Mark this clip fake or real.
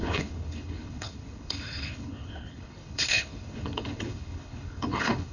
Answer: fake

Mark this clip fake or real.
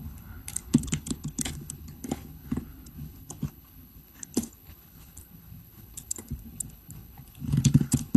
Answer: fake